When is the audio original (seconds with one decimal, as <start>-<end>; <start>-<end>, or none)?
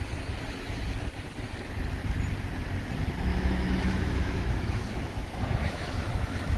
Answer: 0.0-3.3